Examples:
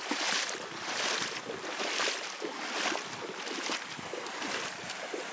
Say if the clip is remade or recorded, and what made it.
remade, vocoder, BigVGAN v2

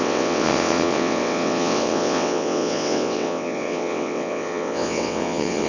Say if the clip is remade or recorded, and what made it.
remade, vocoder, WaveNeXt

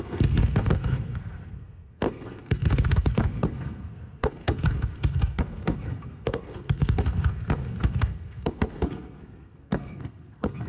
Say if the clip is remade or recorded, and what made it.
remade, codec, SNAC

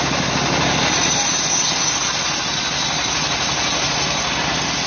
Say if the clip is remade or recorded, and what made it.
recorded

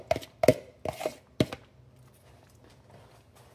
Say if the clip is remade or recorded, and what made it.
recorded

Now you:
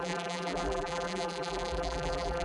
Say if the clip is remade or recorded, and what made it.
remade, vocoder, BigVGAN v2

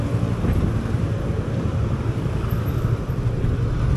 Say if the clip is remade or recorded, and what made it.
recorded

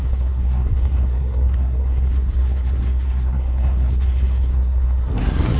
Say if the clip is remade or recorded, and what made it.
remade, codec, SNAC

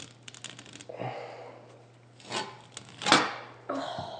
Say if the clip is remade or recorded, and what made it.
recorded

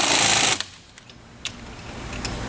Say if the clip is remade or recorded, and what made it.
recorded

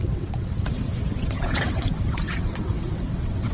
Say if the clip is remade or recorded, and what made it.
remade, vocoder, WaveNeXt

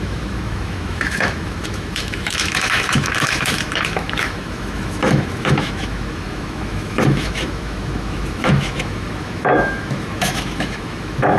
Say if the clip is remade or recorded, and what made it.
remade, autoencoder, DAC-VAE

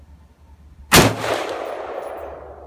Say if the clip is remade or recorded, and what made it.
recorded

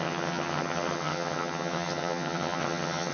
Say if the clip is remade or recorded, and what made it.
remade, vocoder, HiFi-GAN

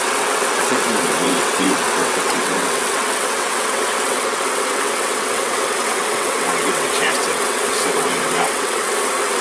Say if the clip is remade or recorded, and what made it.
remade, vocoder, WaveNeXt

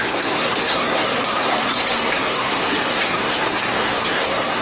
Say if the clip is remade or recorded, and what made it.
remade, codec, SNAC